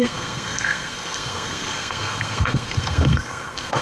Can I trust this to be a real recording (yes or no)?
no